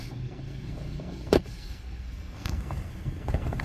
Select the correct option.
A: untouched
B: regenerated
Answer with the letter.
B